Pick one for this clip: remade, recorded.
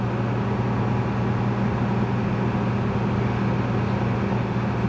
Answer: recorded